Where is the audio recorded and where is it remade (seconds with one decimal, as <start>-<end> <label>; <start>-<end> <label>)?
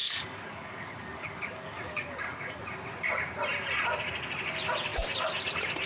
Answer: 0.0-2.6 remade; 2.6-5.9 recorded